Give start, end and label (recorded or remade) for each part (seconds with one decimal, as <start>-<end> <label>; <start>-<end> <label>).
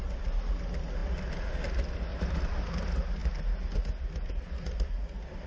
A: 0.0-2.1 recorded; 2.1-2.7 remade; 2.7-5.5 recorded